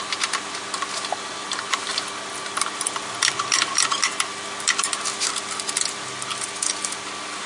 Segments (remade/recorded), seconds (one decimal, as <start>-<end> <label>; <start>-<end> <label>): 0.0-7.5 recorded